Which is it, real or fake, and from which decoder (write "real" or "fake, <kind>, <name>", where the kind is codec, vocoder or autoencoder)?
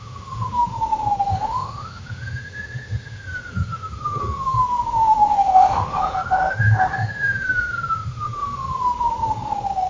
fake, autoencoder, DAC-VAE